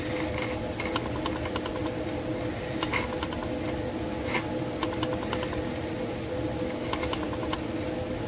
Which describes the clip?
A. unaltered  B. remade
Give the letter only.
A